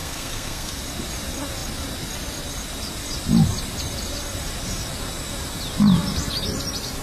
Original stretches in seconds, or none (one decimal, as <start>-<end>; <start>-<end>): 0.8-7.0